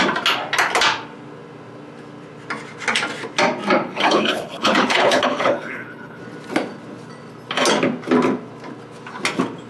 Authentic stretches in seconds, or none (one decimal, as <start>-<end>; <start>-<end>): 0.0-3.8; 6.2-9.7